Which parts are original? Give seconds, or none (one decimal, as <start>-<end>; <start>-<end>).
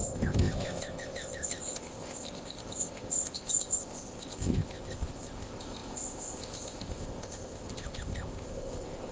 none